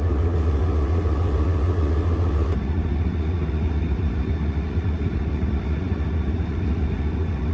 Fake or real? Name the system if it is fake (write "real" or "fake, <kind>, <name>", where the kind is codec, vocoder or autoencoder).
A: fake, vocoder, Vocos